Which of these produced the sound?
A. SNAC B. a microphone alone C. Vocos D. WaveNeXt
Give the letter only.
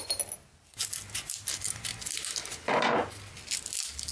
B